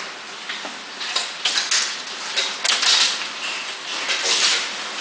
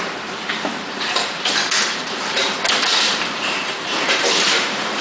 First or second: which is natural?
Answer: first